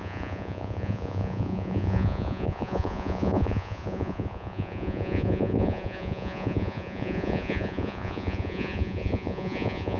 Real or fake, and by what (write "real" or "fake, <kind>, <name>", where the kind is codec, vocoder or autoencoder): fake, vocoder, Vocos